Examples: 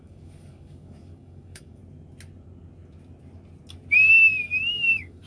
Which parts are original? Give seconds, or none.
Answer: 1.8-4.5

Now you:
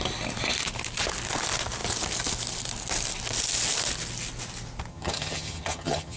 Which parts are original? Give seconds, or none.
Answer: 0.0-4.9

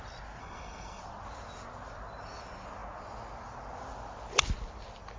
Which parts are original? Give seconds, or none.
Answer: 0.0-0.4; 1.0-5.2

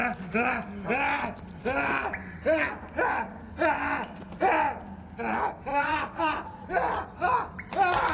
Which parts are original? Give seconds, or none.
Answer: 0.0-5.7; 7.4-8.1

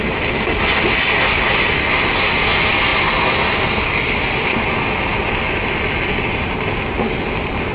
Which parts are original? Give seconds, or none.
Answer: 0.0-7.7

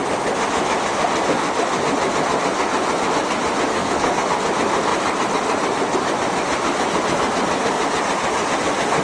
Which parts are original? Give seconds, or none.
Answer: 0.0-3.7; 4.3-9.0